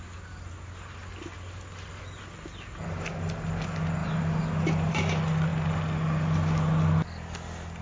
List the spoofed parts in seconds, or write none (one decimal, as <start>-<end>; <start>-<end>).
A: none